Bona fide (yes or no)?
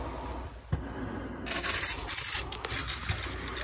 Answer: yes